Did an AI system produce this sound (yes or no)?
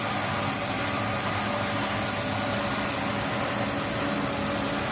no